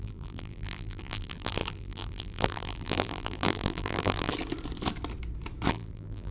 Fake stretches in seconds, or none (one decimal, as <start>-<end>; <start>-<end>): 0.0-4.3; 5.7-6.3